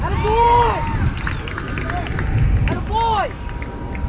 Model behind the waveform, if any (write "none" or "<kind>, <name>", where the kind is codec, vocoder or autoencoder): none